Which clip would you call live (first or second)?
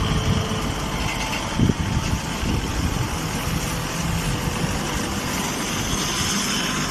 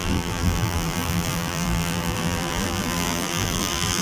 first